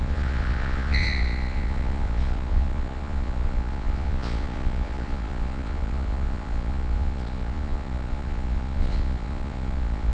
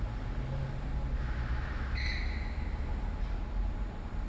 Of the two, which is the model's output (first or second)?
first